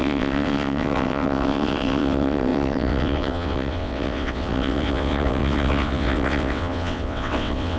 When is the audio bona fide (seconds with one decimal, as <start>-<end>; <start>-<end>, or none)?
none